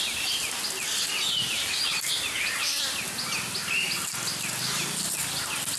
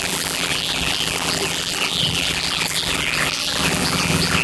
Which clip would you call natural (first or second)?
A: first